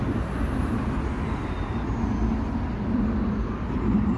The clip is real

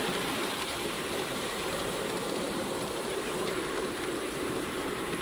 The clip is fake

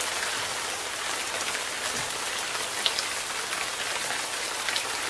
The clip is real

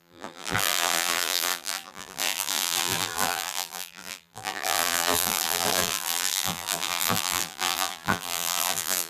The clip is fake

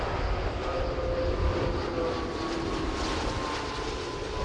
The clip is real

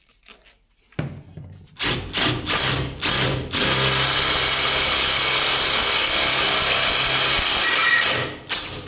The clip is real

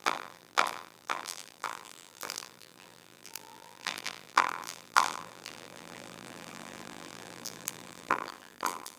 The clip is fake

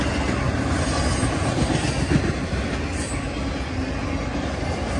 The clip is real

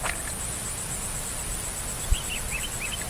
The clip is real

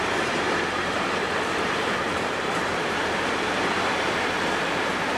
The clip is fake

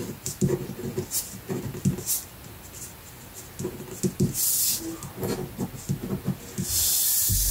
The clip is real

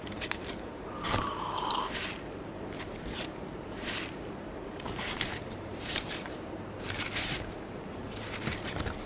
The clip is fake